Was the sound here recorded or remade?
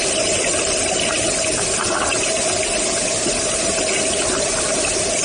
recorded